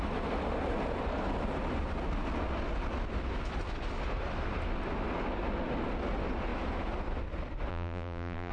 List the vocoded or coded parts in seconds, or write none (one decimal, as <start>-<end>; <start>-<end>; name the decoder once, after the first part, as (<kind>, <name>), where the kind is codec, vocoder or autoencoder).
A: 7.7-8.5 (vocoder, BigVGAN v2)